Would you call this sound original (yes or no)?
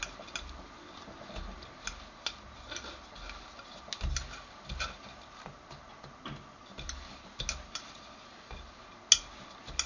yes